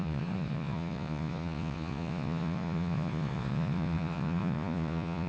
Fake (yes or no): yes